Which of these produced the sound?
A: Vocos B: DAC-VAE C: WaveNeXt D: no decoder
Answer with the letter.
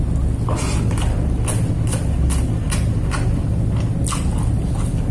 D